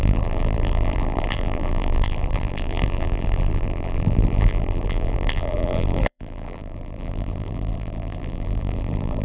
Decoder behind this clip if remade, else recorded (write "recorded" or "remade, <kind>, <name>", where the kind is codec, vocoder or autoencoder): remade, vocoder, BigVGAN v2